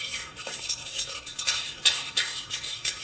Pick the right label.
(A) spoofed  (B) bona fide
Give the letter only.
A